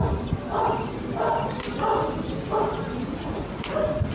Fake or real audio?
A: real